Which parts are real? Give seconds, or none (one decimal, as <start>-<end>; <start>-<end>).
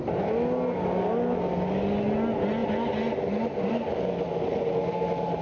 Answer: 0.0-5.4